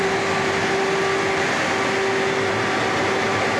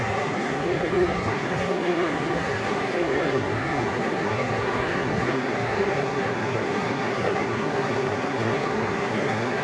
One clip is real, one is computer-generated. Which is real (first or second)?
first